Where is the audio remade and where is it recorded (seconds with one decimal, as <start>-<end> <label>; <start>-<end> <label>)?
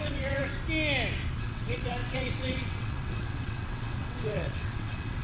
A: 0.0-0.5 remade; 0.5-1.4 recorded; 1.4-5.2 remade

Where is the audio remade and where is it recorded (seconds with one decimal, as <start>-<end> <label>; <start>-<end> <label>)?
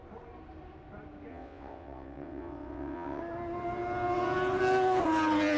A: 0.0-1.3 recorded; 1.3-3.2 remade; 3.2-5.6 recorded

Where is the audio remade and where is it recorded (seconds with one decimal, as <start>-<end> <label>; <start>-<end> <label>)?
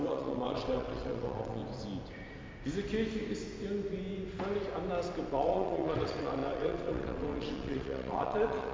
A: 0.0-1.6 remade; 1.6-5.3 recorded; 5.3-8.7 remade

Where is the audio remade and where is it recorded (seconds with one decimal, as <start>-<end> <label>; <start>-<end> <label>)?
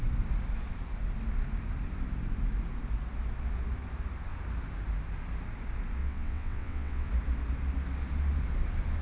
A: 0.0-6.0 recorded; 6.0-7.1 remade; 7.1-9.0 recorded